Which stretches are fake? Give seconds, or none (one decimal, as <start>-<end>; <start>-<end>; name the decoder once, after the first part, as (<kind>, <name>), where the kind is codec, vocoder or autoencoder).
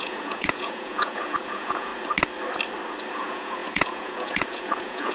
0.0-1.9 (vocoder, Vocos); 3.1-5.1